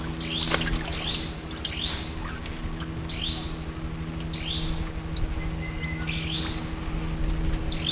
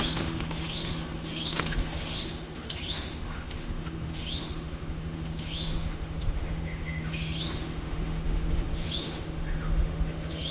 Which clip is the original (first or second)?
first